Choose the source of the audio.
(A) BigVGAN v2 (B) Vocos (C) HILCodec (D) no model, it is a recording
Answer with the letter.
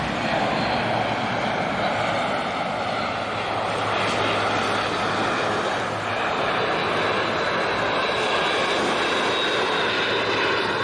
D